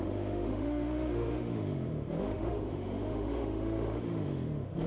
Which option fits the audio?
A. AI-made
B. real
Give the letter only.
A